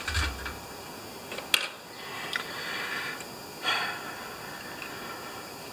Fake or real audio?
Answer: real